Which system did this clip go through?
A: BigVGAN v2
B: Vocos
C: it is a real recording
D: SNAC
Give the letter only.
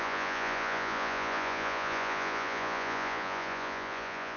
B